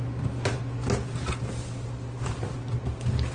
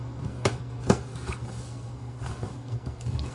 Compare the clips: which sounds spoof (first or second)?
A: second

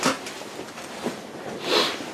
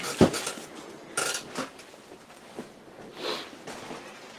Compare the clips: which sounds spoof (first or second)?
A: first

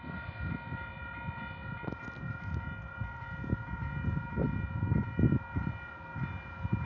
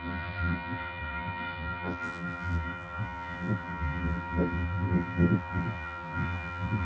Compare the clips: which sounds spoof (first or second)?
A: second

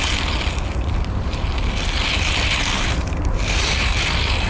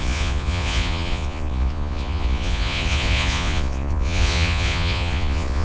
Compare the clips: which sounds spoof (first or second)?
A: second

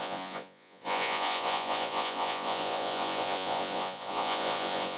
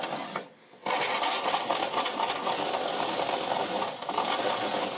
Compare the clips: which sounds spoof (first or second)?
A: first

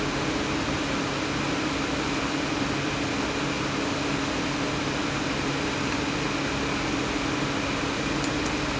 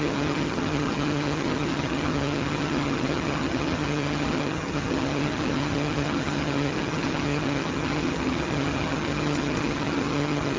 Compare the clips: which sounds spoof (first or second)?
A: second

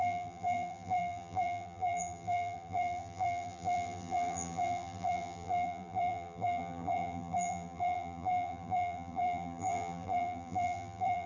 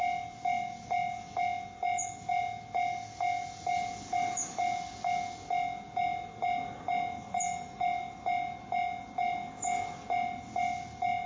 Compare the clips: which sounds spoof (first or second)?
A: first